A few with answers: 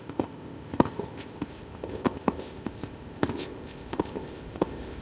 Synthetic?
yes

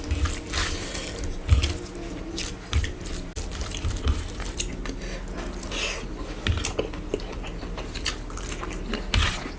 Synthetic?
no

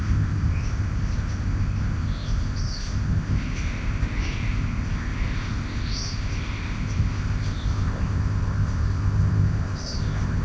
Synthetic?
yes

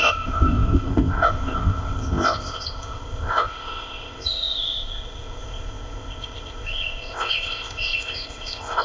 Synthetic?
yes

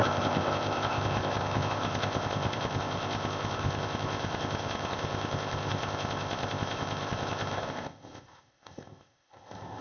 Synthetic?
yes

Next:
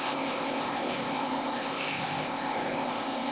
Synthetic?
yes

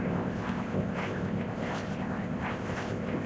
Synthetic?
yes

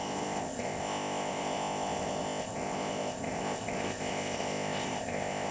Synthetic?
yes